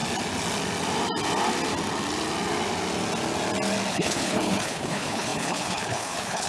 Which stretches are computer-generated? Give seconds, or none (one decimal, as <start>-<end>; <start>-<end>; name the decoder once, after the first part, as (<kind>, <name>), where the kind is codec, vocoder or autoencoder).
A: 3.9-6.5 (codec, HILCodec)